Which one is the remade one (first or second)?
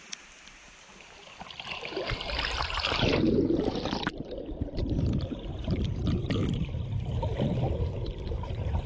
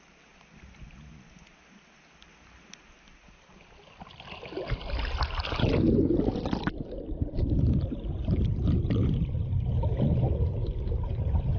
first